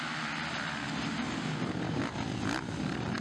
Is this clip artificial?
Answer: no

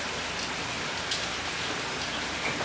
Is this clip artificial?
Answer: no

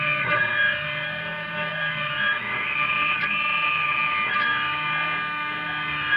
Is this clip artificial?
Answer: no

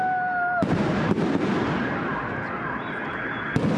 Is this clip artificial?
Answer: no